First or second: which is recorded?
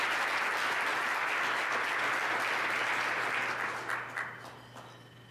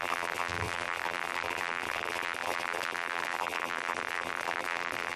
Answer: first